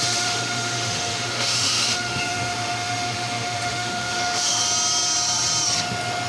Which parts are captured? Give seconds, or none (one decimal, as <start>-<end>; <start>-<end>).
4.6-6.3